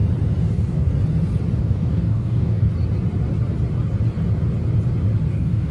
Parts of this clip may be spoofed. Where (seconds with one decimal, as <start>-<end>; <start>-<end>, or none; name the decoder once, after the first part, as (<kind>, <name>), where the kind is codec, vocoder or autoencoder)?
0.5-0.9 (codec, DAC); 1.6-2.7; 5.3-5.7